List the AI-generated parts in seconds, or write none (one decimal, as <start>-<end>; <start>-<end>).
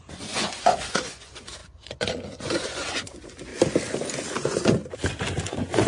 0.0-3.5; 4.3-4.8; 5.5-5.9